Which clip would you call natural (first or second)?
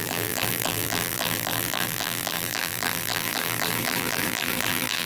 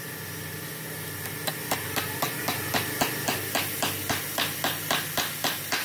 second